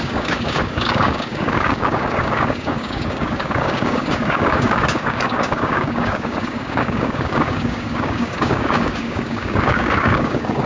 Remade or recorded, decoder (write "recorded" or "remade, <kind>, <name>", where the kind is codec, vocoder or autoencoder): remade, codec, DAC